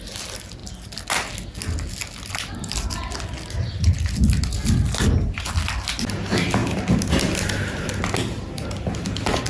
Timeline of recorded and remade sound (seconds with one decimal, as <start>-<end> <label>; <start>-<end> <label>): 0.0-9.5 recorded